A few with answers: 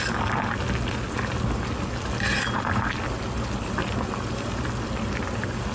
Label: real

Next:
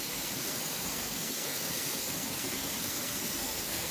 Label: fake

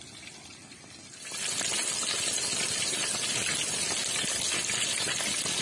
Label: real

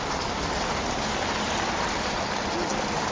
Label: real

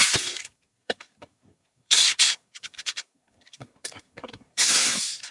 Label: fake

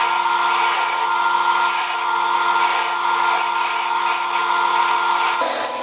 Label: real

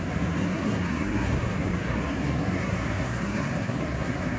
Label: fake